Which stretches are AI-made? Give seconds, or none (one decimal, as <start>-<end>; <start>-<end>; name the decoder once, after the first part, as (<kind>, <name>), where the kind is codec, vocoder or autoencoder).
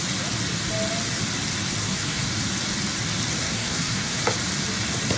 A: 1.8-2.3 (codec, SNAC); 3.4-4.2